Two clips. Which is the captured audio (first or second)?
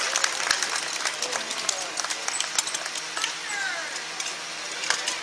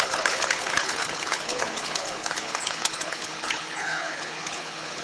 first